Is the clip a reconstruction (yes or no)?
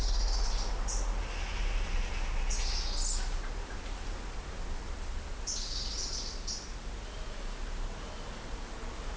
no